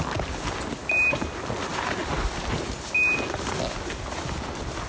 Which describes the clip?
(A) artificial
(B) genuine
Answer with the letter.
B